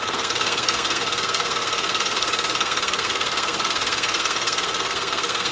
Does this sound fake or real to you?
fake